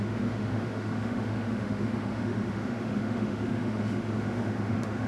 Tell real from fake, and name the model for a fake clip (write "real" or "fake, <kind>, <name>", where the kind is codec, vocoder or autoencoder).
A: fake, autoencoder, DAC-VAE